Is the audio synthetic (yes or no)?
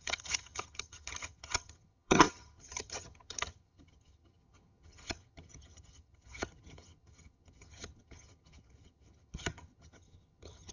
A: yes